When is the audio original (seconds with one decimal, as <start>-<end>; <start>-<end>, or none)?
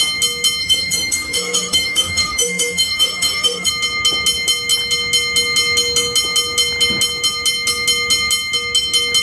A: 0.0-0.6; 3.7-9.2